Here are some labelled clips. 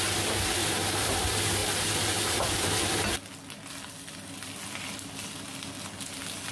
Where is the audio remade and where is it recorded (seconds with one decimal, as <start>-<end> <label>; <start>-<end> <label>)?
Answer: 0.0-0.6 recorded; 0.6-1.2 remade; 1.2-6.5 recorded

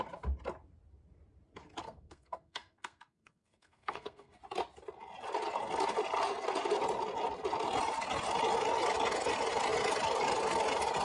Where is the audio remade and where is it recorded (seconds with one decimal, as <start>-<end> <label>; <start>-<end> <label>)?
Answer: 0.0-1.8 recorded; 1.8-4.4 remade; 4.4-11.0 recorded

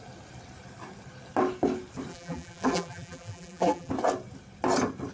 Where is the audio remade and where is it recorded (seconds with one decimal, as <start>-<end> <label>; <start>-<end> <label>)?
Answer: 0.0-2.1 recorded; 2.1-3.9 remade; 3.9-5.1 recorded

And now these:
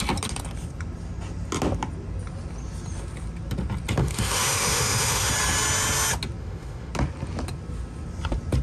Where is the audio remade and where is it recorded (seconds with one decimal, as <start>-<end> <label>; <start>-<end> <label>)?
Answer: 0.0-4.0 recorded; 4.0-5.3 remade; 5.3-6.4 recorded; 6.4-6.9 remade; 6.9-8.6 recorded

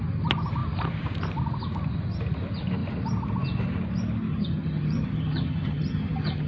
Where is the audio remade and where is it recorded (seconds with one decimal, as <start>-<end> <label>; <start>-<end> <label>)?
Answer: 0.0-4.3 recorded; 4.3-6.5 remade

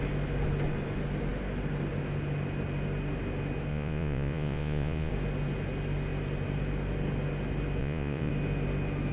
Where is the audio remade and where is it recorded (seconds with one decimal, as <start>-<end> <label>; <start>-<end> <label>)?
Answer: 0.0-3.7 recorded; 3.7-5.1 remade; 5.1-7.8 recorded; 7.8-8.3 remade; 8.3-9.1 recorded

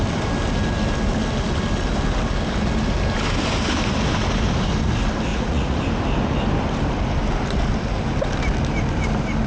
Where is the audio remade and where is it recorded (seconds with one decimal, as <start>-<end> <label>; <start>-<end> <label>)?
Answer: 0.0-5.3 recorded; 5.3-5.8 remade; 5.8-9.5 recorded

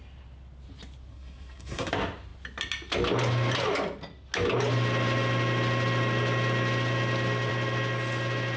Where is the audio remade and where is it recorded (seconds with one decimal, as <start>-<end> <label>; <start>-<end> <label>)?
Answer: 0.0-1.1 recorded; 1.1-1.9 remade; 1.9-8.6 recorded